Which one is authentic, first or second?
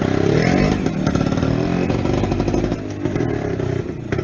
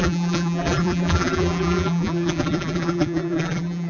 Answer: first